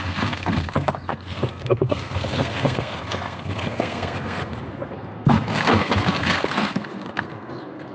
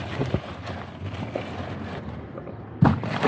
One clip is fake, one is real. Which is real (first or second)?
second